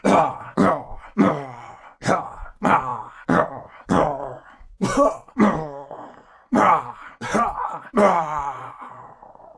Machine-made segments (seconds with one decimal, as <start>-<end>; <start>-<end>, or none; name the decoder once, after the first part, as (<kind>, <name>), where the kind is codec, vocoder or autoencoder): 0.0-9.6 (vocoder, Vocos)